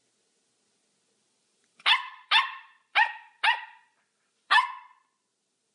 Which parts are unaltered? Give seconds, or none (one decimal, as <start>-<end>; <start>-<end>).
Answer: 0.0-1.2; 4.6-5.7